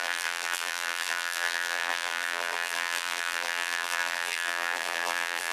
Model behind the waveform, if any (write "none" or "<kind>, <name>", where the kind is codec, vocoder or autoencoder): vocoder, BigVGAN v2